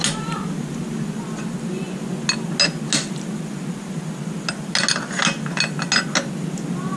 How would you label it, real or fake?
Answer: real